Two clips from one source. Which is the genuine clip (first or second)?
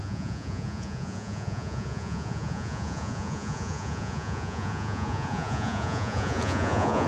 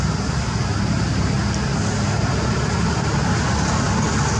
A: second